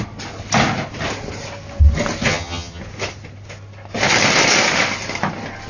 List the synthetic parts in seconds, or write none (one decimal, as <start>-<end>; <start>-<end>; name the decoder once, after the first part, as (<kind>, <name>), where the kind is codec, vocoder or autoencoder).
2.3-2.8 (vocoder, HiFi-GAN)